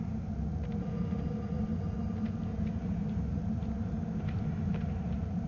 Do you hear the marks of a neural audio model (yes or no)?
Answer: yes